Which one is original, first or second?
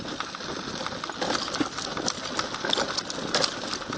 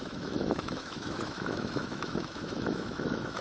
first